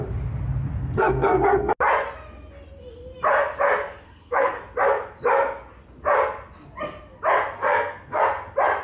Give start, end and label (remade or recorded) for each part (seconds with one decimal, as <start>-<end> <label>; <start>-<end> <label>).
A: 0.0-0.8 recorded; 0.8-1.7 remade; 1.7-4.0 recorded; 4.0-4.6 remade; 4.6-7.6 recorded; 7.6-8.2 remade; 8.2-8.8 recorded